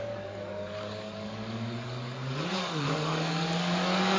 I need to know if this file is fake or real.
fake